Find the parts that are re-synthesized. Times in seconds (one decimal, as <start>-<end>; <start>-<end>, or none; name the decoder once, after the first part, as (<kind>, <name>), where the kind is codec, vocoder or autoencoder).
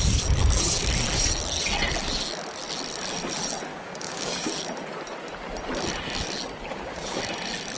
3.7-4.5 (codec, DAC); 6.7-7.2